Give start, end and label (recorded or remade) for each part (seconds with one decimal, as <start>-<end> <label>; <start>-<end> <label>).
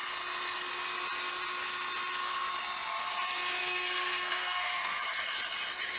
0.0-3.6 recorded; 3.6-5.0 remade; 5.0-6.0 recorded